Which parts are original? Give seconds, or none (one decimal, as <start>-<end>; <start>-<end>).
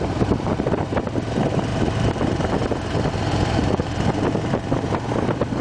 1.7-5.1